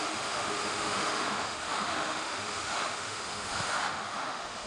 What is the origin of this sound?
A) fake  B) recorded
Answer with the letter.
A